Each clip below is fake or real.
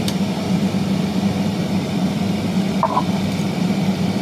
real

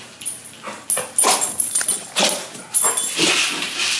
real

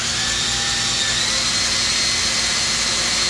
real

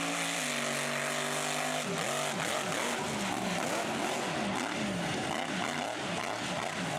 real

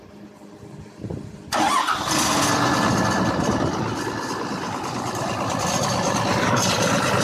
fake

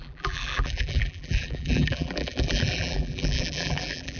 fake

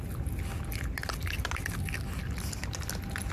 real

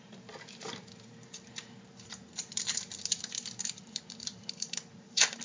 fake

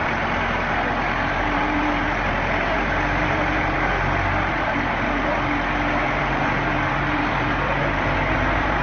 fake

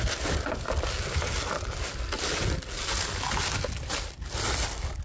real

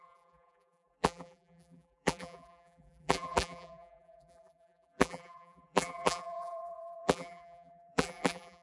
fake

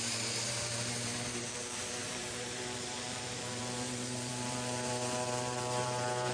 fake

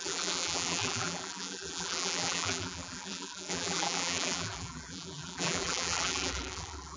fake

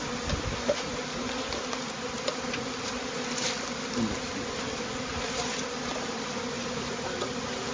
real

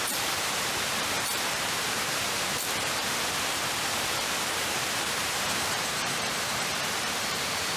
fake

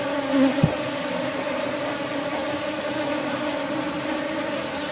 real